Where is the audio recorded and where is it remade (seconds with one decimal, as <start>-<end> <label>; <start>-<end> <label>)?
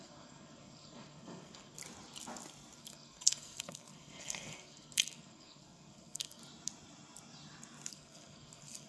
0.0-1.8 remade; 1.8-2.8 recorded; 2.8-6.4 remade; 6.4-7.9 recorded; 7.9-8.9 remade